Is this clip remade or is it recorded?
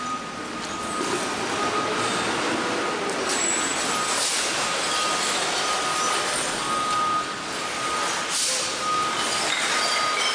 recorded